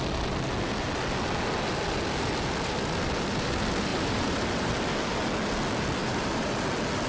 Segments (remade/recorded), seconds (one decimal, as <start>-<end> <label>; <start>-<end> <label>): 0.0-3.9 recorded; 3.9-4.7 remade; 4.7-6.0 recorded; 6.0-6.6 remade; 6.6-7.1 recorded